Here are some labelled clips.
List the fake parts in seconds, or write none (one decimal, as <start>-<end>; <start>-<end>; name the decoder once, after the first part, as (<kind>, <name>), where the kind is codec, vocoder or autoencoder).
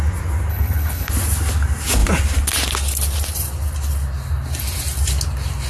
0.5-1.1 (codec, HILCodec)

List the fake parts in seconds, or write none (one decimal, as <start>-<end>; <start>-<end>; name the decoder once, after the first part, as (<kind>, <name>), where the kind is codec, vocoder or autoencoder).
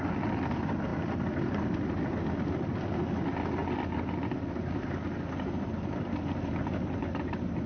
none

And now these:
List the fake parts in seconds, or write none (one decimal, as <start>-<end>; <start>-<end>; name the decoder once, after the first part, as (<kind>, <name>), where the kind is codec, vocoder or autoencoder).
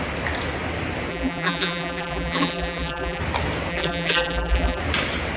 1.1-3.2 (vocoder, BigVGAN v2); 3.7-4.8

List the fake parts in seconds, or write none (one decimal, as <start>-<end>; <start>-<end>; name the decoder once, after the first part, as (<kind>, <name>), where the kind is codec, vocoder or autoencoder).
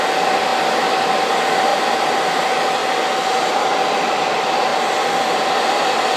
1.7-2.4 (vocoder, BigVGAN v2)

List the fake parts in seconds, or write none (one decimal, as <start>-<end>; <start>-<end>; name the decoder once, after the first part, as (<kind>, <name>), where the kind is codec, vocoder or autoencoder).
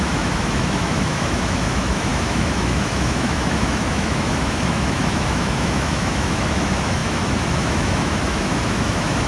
0.0-9.3 (autoencoder, DAC-VAE)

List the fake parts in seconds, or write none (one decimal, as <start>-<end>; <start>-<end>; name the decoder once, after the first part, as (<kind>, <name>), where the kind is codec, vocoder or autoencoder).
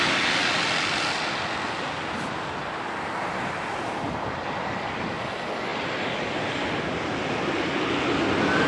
none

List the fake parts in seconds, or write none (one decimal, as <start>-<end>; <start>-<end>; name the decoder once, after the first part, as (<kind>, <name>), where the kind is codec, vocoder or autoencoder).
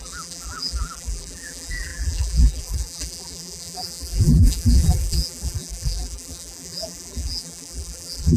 0.0-8.4 (vocoder, BigVGAN v2)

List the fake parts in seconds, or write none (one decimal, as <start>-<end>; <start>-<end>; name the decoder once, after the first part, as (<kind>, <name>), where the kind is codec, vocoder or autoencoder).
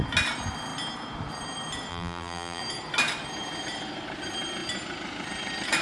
1.9-2.6 (vocoder, BigVGAN v2)